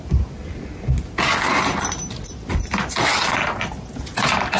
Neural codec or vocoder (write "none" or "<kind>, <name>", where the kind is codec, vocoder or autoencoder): none